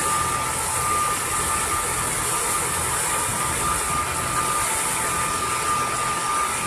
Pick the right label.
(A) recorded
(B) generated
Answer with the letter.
A